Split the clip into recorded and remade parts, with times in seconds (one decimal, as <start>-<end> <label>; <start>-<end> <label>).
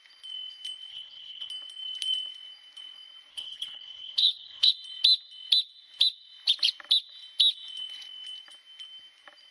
0.0-0.9 recorded; 0.9-1.5 remade; 1.5-3.3 recorded; 3.3-4.7 remade; 4.7-9.5 recorded